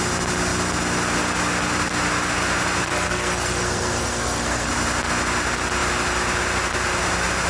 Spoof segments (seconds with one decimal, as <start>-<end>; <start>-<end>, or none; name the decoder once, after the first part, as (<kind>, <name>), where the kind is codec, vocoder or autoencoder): 2.9-4.7 (codec, SNAC)